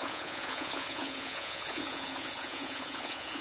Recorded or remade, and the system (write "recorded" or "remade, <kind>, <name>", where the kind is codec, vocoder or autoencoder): remade, vocoder, Vocos